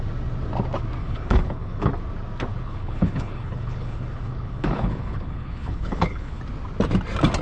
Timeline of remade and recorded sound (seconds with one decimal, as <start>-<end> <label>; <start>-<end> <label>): 0.0-1.0 recorded; 1.0-1.9 remade; 1.9-2.5 recorded; 2.5-6.4 remade; 6.4-7.4 recorded